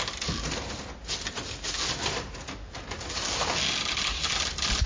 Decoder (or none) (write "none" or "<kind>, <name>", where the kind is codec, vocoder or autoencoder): none